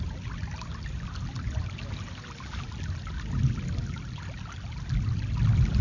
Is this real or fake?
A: real